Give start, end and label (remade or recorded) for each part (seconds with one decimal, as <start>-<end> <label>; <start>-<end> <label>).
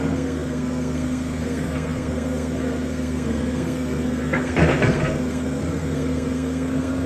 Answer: 0.0-7.1 remade